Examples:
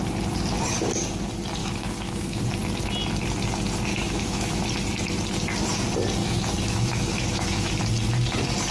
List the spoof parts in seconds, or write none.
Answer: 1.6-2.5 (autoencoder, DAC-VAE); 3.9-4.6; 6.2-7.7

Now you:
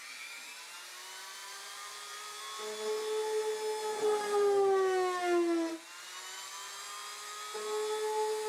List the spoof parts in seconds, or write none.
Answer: 1.4-2.4 (vocoder, BigVGAN v2)

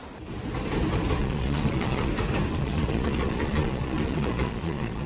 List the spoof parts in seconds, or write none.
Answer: 1.2-2.1 (vocoder, Vocos); 2.5-5.1